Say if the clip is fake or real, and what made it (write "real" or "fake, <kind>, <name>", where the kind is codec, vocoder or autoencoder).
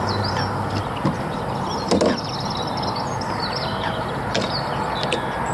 real